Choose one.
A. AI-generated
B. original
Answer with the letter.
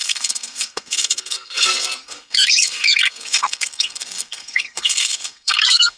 A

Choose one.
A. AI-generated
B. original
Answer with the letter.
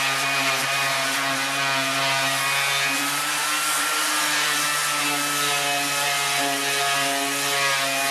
B